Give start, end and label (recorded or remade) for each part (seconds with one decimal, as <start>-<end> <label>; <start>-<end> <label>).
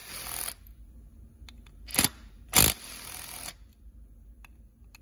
0.0-5.0 recorded